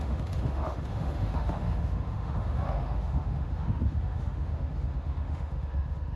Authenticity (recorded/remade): remade